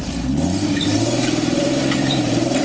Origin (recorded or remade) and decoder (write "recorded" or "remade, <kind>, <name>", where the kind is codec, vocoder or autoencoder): remade, vocoder, BigVGAN v2